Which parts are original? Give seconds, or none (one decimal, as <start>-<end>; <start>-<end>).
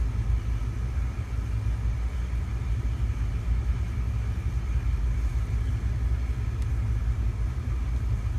0.0-8.4